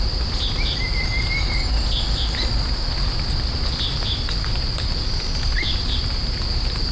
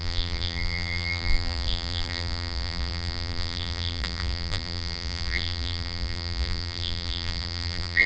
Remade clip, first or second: second